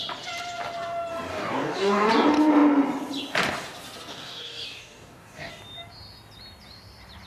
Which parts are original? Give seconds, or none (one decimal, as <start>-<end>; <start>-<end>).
0.0-1.3; 2.1-4.1; 5.5-7.3